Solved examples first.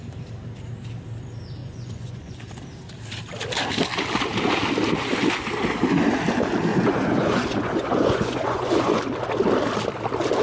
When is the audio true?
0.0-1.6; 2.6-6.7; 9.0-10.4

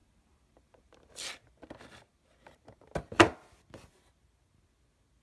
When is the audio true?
0.0-5.2